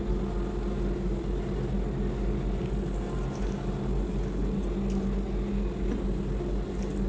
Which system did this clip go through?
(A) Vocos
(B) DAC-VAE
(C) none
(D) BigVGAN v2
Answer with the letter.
C